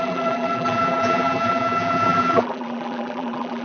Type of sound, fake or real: fake